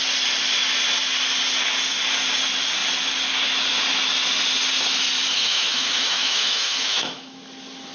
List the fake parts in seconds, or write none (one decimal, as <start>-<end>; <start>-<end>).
5.3-7.4